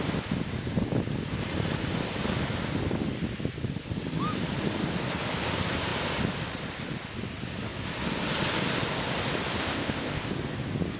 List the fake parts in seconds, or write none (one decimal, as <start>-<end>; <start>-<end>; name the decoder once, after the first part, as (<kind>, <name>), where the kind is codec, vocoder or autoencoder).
9.6-10.3 (codec, ZipCodec)